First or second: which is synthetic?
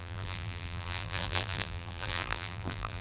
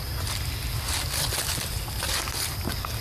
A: first